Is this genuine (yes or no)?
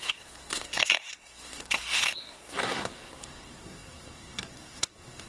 no